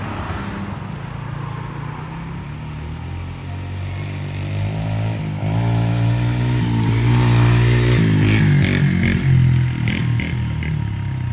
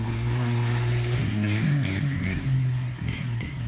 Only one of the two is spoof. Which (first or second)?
second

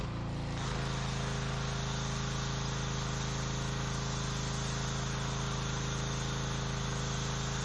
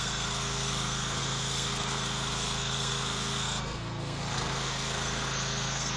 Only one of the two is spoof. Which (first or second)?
second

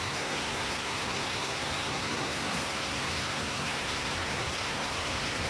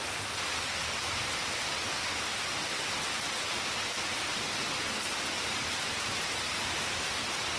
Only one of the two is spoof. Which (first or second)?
first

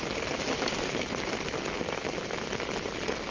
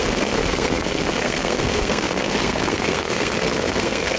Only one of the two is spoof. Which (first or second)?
second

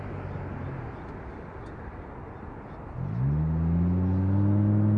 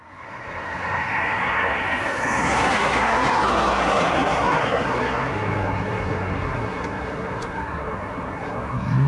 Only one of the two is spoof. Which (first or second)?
second